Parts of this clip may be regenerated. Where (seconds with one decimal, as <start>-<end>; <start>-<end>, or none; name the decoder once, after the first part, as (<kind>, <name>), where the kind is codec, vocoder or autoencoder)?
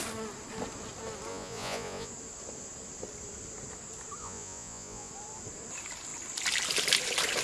1.3-2.1 (vocoder, Vocos); 4.2-5.1